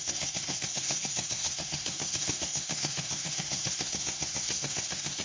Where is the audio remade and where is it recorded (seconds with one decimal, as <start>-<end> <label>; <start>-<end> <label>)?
0.0-5.2 remade